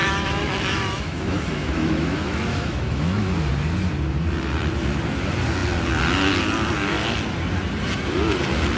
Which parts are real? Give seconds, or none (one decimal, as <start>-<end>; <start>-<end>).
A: 3.5-8.8

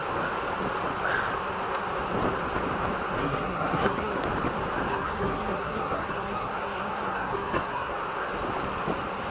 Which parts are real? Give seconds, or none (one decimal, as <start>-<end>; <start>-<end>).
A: 0.0-3.2; 4.2-4.9; 7.9-9.3

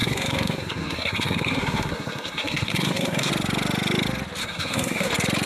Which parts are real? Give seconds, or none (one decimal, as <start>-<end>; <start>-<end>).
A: 3.3-4.4; 5.1-5.5

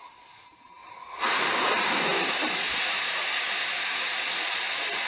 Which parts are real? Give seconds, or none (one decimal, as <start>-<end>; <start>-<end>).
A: 0.0-5.1

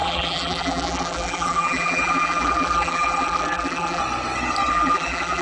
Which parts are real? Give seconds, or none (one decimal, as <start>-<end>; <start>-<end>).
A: 4.0-4.7

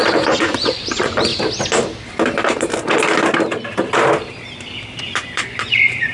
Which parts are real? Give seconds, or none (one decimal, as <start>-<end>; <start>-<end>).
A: 1.3-5.0